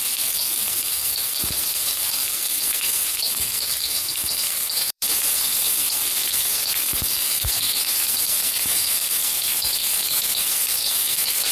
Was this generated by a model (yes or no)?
yes